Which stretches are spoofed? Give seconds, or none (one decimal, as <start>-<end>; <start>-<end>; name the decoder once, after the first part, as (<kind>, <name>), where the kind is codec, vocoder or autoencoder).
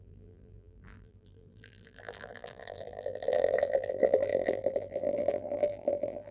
0.0-6.3 (vocoder, BigVGAN v2)